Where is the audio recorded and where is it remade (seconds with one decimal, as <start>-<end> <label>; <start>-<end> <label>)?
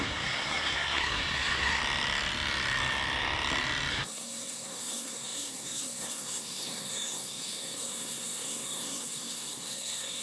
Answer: 0.0-1.8 remade; 1.8-3.9 recorded; 3.9-10.2 remade